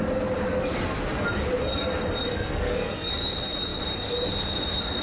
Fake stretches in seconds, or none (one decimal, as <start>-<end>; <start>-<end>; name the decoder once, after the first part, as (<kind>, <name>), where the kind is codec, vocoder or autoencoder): 2.3-3.1 (codec, SNAC)